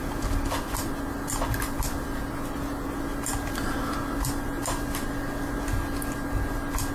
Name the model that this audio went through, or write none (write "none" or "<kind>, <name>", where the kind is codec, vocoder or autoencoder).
none